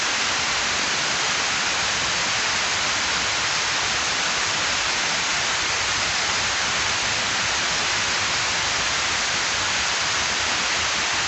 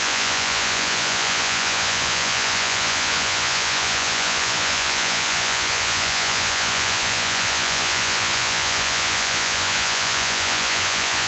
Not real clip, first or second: second